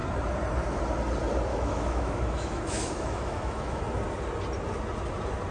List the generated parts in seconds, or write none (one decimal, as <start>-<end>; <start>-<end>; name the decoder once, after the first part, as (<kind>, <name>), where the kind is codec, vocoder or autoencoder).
1.5-3.8 (autoencoder, DAC-VAE)